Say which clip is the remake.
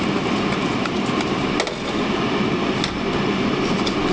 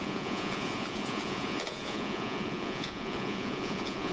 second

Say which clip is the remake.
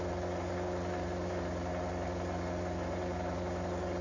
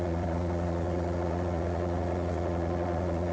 second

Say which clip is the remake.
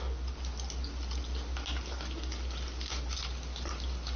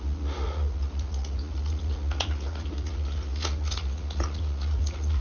second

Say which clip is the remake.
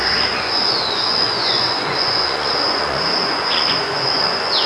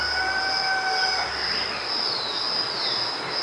first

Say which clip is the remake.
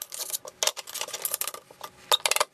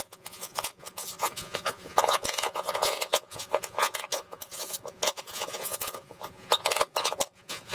second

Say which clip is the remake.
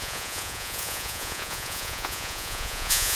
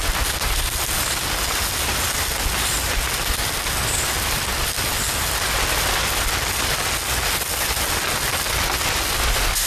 first